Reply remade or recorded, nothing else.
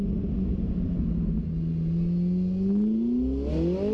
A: recorded